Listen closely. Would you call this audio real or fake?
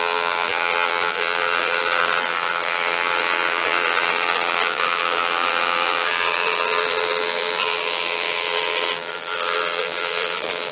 fake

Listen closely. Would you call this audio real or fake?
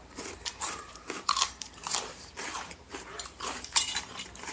fake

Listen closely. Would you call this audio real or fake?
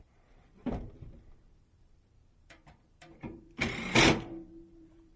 fake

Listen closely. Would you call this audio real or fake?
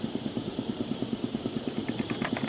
fake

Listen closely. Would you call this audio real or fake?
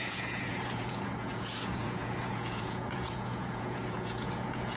fake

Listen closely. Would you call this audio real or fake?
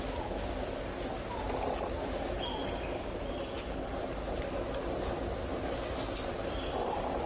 real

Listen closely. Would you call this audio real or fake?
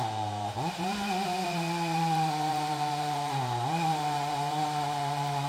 fake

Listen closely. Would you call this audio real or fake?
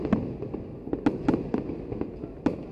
real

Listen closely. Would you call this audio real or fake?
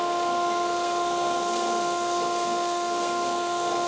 fake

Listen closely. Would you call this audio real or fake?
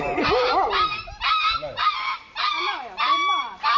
real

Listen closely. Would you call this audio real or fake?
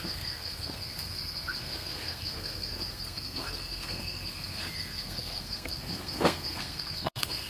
fake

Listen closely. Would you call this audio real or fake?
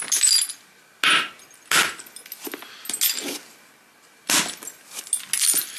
real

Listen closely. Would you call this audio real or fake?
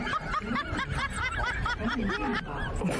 fake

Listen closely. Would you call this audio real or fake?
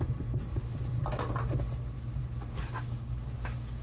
real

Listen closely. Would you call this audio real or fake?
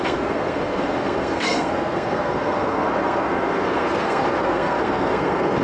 fake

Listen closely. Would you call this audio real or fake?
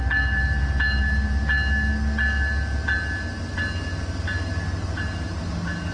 real